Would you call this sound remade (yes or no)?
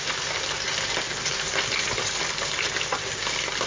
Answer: no